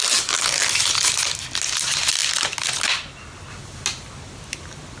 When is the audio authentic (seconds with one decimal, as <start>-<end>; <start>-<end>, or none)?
0.0-5.0